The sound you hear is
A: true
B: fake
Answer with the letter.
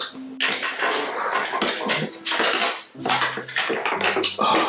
A